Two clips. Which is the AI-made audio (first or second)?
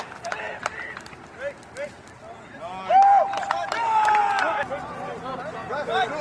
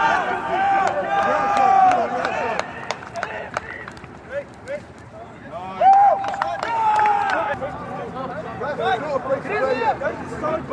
second